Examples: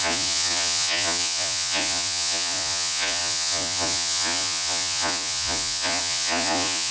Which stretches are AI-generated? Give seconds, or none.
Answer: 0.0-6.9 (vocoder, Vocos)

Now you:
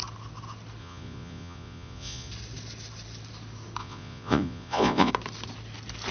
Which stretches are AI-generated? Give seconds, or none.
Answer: 0.8-2.3 (vocoder, Vocos); 3.8-5.1